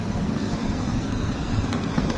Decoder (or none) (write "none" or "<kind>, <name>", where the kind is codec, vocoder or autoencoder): codec, SNAC